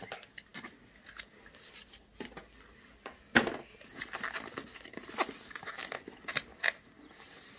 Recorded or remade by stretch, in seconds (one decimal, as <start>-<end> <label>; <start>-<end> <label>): 0.0-7.6 recorded